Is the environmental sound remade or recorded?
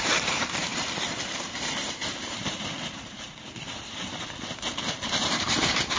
remade